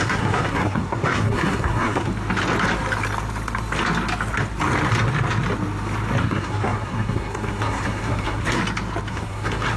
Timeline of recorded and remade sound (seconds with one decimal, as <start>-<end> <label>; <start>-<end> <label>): 0.0-2.1 remade; 2.1-6.2 recorded; 6.2-8.6 remade; 8.6-9.1 recorded; 9.1-9.8 remade